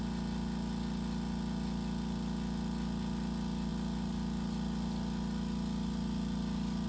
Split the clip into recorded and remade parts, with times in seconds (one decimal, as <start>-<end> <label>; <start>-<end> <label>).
0.0-6.9 recorded